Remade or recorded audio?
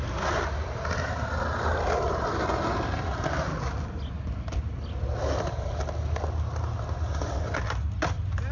recorded